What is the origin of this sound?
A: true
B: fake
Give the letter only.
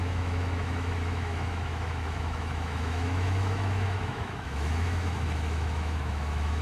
B